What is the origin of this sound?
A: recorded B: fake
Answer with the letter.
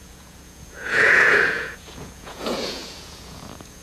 B